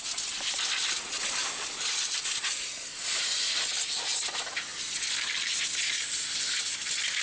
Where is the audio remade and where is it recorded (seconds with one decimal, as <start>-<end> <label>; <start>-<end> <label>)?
0.0-7.2 recorded